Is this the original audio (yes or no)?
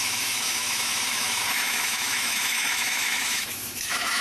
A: no